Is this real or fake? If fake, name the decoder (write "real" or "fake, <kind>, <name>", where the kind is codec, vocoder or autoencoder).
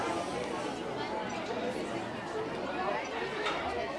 real